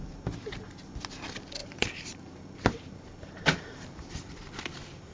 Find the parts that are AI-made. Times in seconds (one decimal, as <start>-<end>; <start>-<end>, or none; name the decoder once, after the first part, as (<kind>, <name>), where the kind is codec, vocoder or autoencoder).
1.6-4.5 (vocoder, BigVGAN v2)

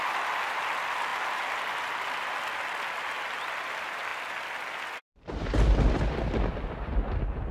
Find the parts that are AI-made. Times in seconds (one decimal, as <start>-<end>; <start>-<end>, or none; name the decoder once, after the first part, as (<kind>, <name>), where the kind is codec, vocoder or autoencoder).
none

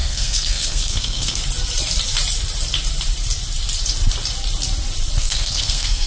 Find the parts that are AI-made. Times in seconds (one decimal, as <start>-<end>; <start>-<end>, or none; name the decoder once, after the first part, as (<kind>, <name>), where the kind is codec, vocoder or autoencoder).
0.0-1.4 (codec, SNAC); 5.2-6.1